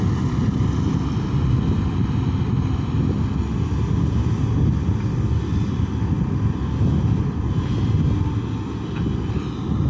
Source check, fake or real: real